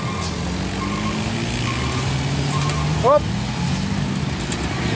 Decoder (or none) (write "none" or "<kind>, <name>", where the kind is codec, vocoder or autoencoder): none